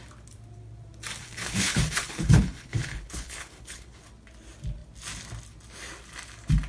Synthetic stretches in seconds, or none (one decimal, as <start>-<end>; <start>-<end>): 1.2-4.1